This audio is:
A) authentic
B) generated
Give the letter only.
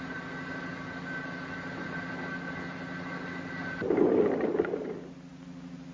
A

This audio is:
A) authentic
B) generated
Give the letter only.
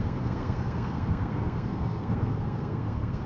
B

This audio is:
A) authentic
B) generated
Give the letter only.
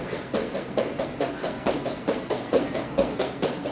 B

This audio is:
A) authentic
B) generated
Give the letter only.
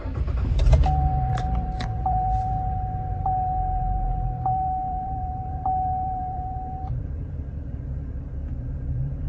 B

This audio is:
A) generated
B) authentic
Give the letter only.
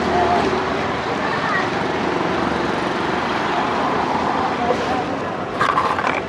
A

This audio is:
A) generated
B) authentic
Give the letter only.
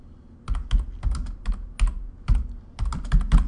B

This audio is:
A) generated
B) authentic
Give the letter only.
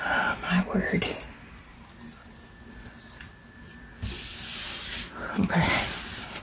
B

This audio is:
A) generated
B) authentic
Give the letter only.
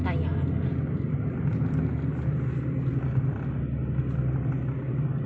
B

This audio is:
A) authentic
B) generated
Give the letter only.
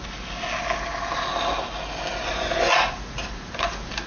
A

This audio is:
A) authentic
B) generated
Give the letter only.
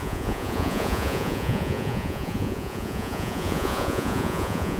B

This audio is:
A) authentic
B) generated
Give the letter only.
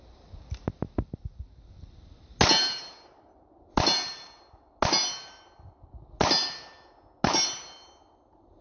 A